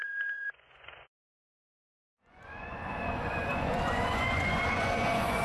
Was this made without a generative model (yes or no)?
no